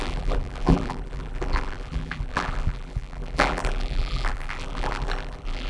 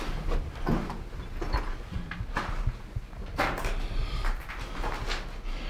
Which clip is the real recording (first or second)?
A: second